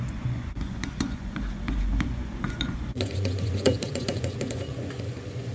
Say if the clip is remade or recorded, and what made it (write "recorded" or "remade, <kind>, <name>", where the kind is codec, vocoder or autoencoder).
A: remade, vocoder, Vocos